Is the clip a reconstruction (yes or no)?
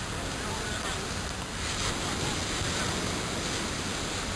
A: no